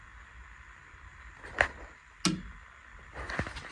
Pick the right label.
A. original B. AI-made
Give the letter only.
A